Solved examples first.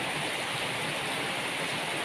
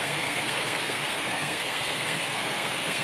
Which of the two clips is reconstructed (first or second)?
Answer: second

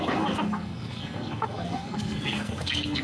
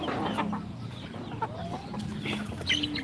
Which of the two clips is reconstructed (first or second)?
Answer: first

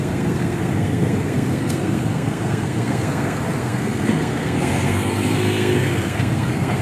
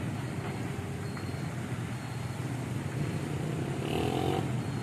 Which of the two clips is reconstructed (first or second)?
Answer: first